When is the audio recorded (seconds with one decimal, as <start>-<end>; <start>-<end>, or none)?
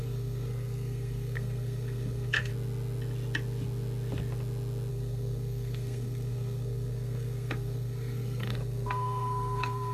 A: 2.5-4.9